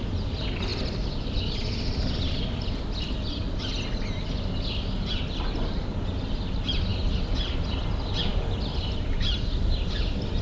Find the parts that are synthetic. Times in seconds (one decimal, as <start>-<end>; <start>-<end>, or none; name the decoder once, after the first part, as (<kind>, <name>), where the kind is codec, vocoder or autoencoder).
none